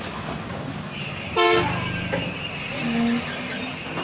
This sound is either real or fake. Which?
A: real